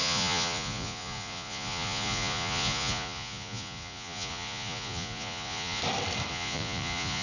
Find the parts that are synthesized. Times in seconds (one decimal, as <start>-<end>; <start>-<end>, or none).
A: 0.0-5.8; 6.3-7.2